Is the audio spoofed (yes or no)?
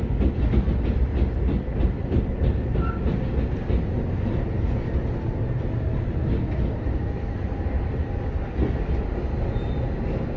no